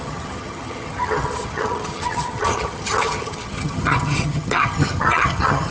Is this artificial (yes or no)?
yes